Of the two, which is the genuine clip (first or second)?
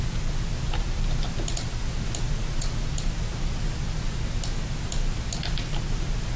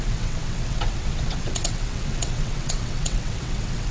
first